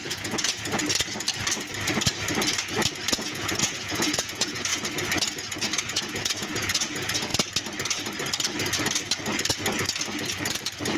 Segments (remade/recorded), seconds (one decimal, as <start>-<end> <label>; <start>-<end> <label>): 0.0-0.8 remade; 0.8-3.1 recorded; 3.1-4.7 remade; 4.7-5.8 recorded; 5.8-7.3 remade; 7.3-11.0 recorded